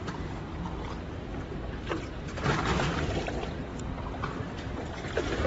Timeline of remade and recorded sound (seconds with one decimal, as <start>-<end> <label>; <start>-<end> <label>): 0.0-1.3 remade; 1.3-1.9 recorded; 1.9-3.7 remade; 3.7-4.7 recorded; 4.7-5.5 remade